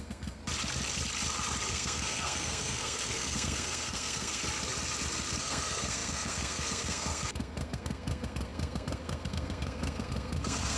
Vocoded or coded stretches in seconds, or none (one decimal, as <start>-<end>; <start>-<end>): 0.0-0.4; 1.7-4.4; 5.4-10.8